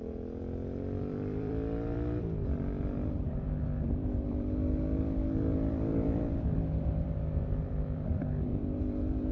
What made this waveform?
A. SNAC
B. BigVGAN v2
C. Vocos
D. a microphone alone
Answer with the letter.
B